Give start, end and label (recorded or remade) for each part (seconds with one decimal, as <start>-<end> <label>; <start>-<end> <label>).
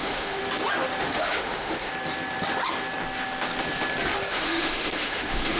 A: 0.0-0.4 remade; 0.4-1.0 recorded; 1.0-1.9 remade; 1.9-4.3 recorded; 4.3-5.6 remade